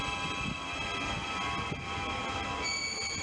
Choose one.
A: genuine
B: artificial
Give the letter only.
A